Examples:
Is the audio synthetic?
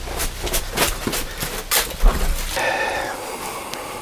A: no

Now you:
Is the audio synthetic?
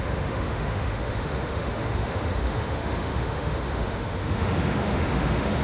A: yes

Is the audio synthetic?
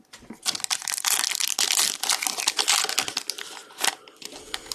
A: no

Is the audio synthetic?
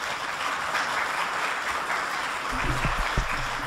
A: no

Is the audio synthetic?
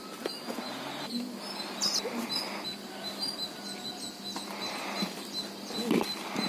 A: no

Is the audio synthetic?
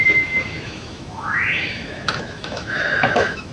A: yes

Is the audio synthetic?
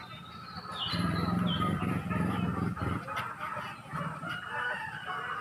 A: no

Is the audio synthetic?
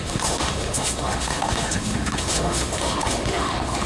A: yes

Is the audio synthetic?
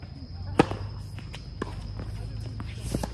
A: no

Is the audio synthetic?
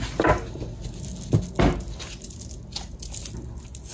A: no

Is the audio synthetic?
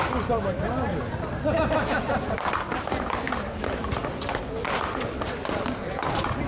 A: no